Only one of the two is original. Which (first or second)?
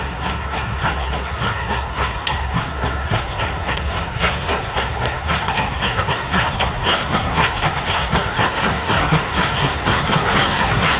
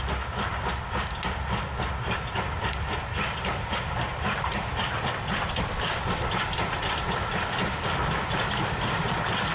second